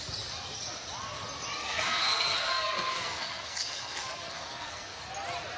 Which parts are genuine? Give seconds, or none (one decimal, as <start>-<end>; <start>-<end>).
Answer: 0.0-1.6; 5.0-5.6